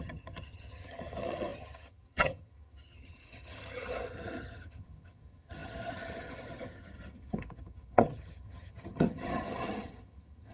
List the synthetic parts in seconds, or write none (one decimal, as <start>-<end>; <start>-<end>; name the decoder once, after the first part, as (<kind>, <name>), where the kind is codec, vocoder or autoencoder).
0.0-10.5 (vocoder, HiFi-GAN)